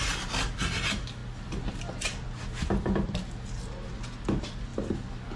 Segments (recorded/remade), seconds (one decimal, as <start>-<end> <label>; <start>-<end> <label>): 0.0-5.4 recorded